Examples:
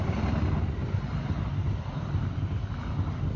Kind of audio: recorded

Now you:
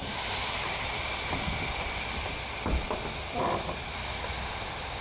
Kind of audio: remade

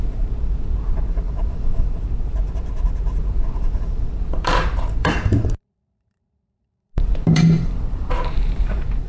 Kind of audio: remade